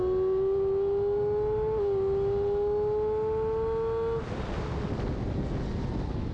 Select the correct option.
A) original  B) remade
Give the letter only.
A